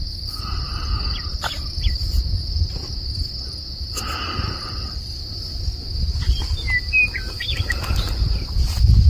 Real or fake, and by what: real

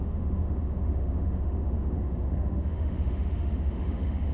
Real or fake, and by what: fake, autoencoder, DAC-VAE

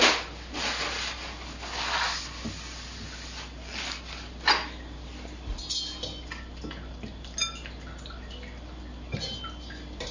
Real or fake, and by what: real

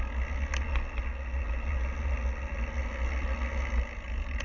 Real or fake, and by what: real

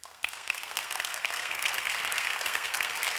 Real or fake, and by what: fake, codec, SNAC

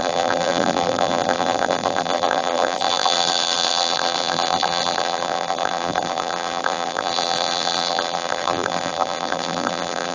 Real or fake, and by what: fake, vocoder, BigVGAN v2